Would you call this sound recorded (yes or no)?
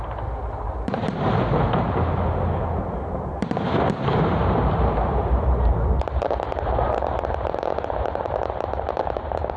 no